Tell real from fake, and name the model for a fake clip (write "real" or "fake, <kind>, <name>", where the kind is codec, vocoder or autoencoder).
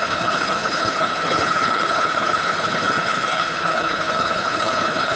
fake, codec, HILCodec